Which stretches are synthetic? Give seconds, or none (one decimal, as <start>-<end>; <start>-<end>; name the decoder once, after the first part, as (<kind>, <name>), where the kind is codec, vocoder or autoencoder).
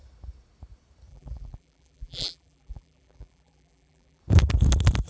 1.1-4.2 (vocoder, BigVGAN v2)